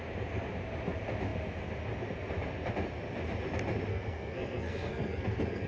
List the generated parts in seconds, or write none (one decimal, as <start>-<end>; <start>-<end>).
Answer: 3.9-5.7